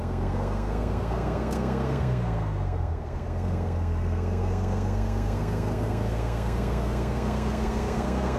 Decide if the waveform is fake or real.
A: fake